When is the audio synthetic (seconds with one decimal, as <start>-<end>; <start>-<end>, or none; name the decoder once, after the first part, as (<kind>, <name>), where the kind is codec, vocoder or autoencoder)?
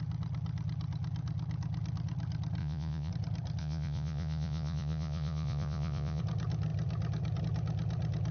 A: 2.6-3.1 (vocoder, Vocos); 3.6-6.2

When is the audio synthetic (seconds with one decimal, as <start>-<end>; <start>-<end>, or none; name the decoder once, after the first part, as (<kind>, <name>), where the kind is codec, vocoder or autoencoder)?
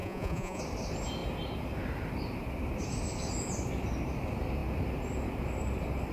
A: 0.0-0.6 (vocoder, Vocos)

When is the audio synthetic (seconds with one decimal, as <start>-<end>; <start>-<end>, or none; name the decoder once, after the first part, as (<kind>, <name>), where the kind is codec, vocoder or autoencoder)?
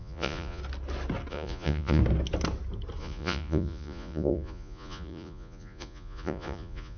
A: 0.0-0.6 (vocoder, Vocos); 1.3-2.0; 3.0-7.0